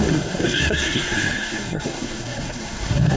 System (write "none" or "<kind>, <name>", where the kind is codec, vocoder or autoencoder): codec, SNAC